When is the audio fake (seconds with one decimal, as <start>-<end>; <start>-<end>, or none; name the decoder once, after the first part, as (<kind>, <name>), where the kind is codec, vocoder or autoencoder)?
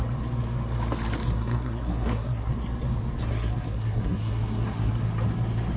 1.2-2.5 (codec, SNAC); 3.3-5.1